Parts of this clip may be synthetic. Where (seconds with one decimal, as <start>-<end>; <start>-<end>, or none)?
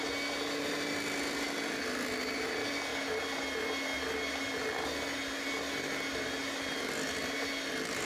none